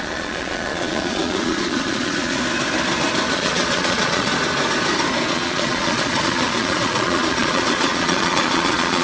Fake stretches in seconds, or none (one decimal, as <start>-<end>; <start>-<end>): 0.0-2.4; 3.3-4.3; 5.3-9.0